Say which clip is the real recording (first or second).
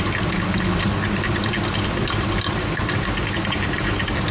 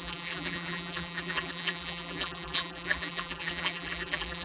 first